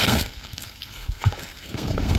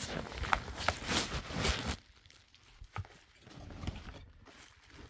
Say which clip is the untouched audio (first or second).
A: second